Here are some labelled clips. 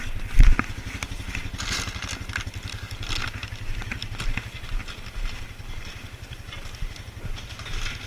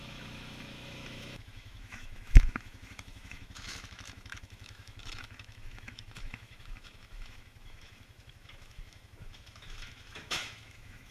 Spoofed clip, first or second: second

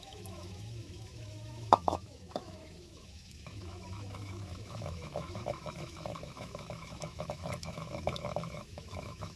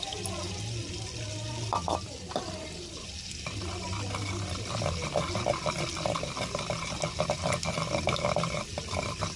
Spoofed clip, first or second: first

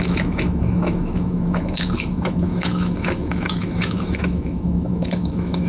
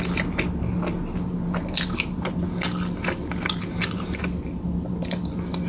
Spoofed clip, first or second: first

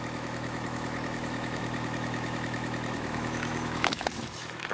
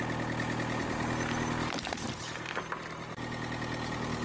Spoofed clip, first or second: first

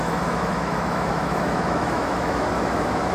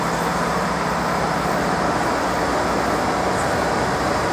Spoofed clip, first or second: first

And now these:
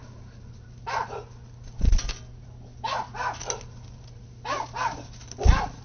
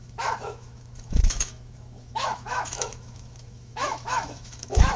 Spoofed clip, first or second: second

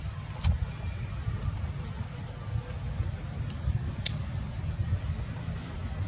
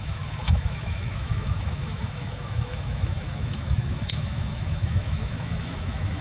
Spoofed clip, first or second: second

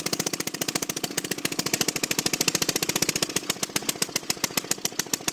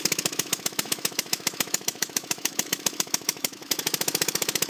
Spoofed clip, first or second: second